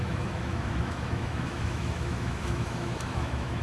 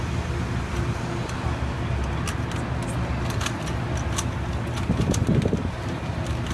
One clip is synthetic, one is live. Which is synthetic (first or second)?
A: first